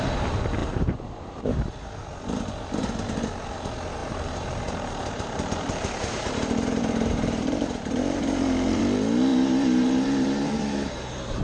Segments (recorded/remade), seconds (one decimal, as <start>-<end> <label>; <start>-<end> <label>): 0.0-0.6 recorded; 0.6-1.6 remade; 1.6-4.0 recorded; 4.0-8.8 remade; 8.8-9.3 recorded; 9.3-11.4 remade